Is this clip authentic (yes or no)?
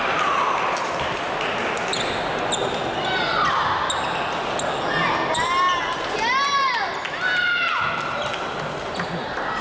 yes